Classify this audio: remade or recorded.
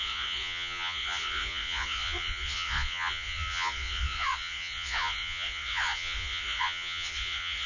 remade